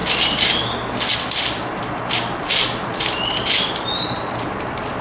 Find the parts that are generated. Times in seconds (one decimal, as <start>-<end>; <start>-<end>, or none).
none